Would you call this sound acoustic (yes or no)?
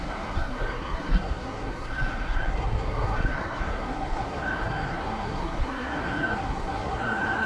no